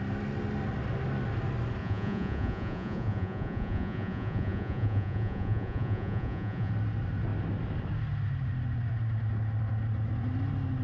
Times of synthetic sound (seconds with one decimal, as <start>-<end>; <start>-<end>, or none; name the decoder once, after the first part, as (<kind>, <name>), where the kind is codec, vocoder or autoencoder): 1.8-6.7 (vocoder, Vocos)